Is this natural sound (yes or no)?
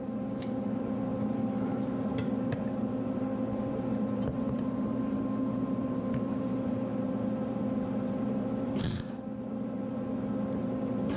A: no